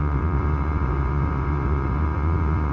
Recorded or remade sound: remade